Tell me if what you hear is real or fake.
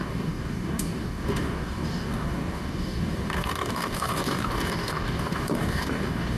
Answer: fake